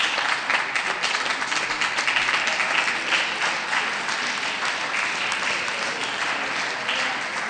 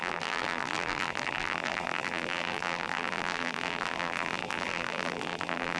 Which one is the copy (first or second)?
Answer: second